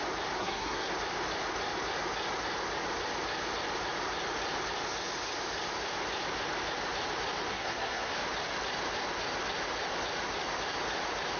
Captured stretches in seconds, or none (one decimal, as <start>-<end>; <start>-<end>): 0.0-0.4; 0.9-7.5; 8.1-11.4